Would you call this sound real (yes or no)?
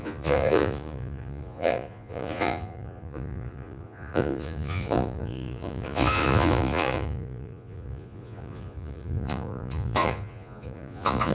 no